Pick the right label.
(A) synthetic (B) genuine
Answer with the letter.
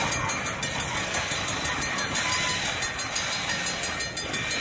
B